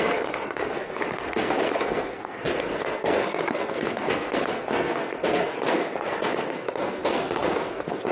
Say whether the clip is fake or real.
fake